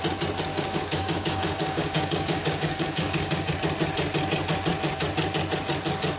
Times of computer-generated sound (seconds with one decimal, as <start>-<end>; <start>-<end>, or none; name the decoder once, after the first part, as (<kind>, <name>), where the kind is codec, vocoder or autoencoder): 0.5-3.5 (codec, DAC)